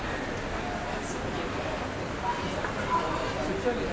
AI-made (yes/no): no